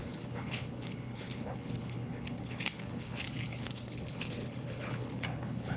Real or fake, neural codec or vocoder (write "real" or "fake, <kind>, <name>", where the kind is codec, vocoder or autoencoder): fake, codec, HILCodec